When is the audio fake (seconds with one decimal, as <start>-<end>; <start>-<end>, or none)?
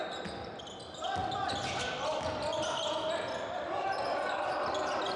none